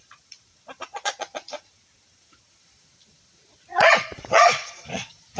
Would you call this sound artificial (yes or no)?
yes